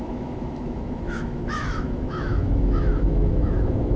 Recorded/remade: remade